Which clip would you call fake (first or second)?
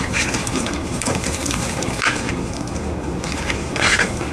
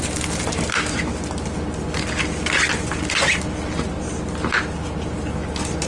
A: first